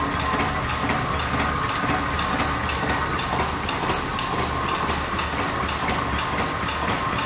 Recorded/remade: recorded